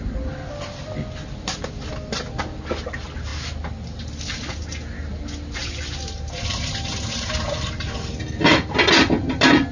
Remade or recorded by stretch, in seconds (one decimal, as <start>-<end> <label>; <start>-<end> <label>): 0.0-9.7 recorded

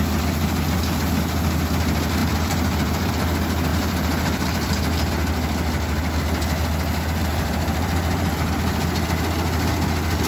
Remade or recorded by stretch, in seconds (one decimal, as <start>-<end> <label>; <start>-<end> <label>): 0.0-2.2 recorded; 2.2-3.1 remade; 3.1-3.7 recorded; 3.7-5.1 remade; 5.1-7.2 recorded; 7.2-8.5 remade; 8.5-10.3 recorded